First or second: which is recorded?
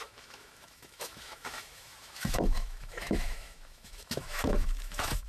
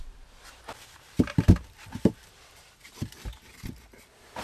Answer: second